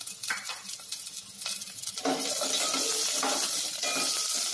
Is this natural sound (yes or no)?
yes